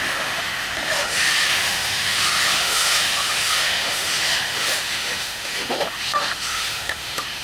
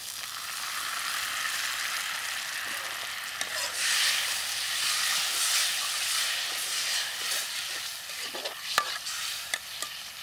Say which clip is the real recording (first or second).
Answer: second